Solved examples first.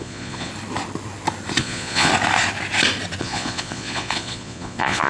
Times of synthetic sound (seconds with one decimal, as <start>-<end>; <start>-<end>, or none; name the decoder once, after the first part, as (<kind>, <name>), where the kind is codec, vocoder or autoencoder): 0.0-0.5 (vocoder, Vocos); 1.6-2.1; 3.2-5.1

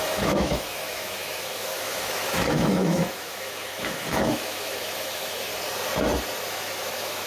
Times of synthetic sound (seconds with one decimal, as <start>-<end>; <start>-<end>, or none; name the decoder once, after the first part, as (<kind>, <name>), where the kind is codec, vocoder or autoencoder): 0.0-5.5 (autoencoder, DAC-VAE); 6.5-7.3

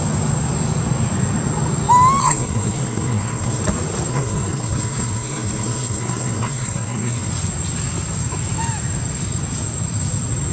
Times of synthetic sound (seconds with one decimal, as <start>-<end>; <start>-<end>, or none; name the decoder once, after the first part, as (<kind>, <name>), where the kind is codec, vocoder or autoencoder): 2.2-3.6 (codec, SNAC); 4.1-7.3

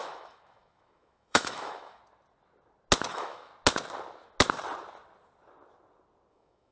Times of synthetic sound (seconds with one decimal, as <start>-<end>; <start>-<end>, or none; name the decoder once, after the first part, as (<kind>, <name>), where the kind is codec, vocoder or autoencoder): 0.0-2.0 (autoencoder, DAC-VAE); 3.1-3.5; 6.3-6.7